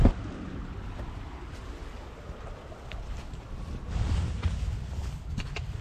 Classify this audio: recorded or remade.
recorded